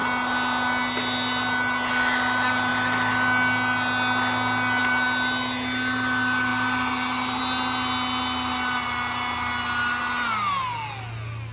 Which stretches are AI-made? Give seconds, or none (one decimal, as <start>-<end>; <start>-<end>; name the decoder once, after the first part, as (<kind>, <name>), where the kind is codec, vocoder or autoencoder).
6.5-7.4 (vocoder, BigVGAN v2)